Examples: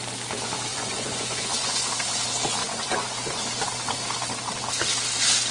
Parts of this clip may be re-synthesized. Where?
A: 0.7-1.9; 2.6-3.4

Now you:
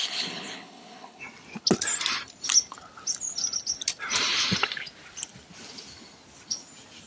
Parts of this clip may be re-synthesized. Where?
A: 0.0-1.2

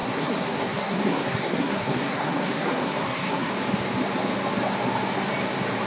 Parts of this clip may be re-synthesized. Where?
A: 0.0-3.5

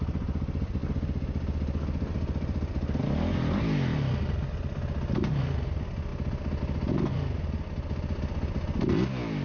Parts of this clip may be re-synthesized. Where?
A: none

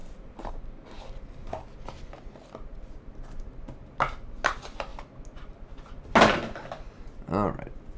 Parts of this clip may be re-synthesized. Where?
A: 0.0-0.5